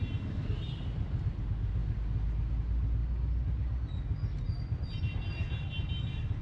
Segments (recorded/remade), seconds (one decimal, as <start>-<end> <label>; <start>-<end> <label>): 0.0-6.4 recorded